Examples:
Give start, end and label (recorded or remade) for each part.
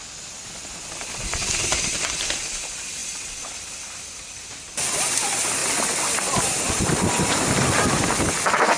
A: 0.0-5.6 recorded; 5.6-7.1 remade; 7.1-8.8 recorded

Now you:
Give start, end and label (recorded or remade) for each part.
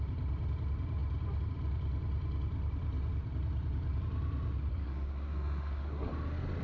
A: 0.0-4.7 recorded; 4.7-6.1 remade; 6.1-6.6 recorded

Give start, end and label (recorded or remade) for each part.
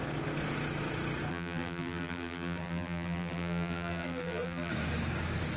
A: 0.0-1.3 recorded; 1.3-4.7 remade; 4.7-5.6 recorded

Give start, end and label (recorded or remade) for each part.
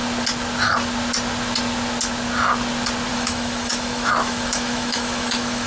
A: 0.0-3.1 recorded; 3.1-5.7 remade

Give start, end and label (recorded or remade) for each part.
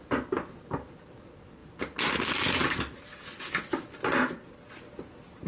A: 0.0-5.5 recorded